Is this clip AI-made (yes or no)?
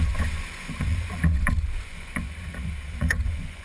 yes